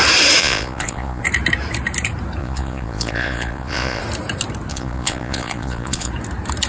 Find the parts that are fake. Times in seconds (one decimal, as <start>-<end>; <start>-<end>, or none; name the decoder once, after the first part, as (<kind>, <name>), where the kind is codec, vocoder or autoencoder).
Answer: 0.4-1.2 (vocoder, Vocos); 2.4-4.0; 4.7-6.1